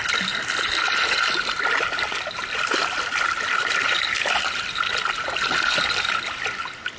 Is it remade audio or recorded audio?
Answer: recorded